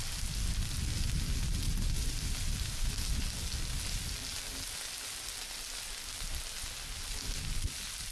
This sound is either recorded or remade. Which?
recorded